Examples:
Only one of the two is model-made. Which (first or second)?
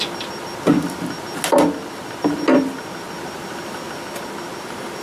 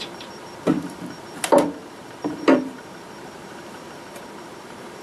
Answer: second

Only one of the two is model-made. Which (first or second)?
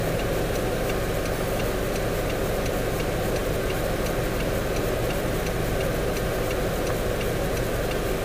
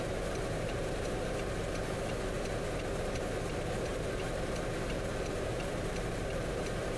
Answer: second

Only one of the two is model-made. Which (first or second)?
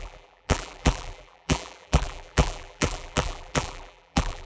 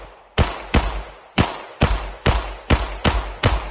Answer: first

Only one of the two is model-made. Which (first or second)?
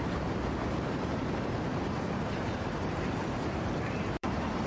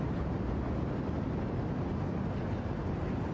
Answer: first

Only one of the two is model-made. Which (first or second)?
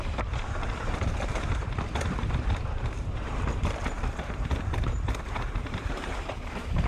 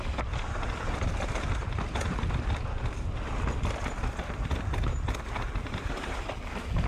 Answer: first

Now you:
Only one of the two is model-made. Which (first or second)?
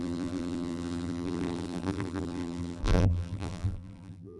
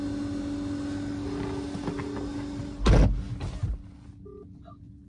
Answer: first